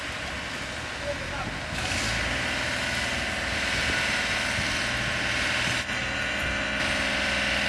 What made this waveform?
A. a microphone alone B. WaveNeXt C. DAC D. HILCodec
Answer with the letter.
A